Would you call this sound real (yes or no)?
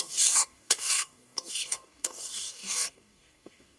no